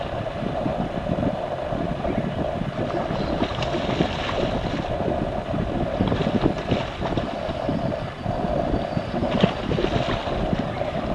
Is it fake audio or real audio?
real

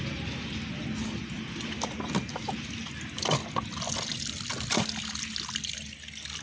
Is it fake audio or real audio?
real